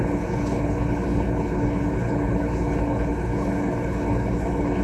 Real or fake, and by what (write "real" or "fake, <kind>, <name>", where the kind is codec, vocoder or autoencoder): fake, codec, HILCodec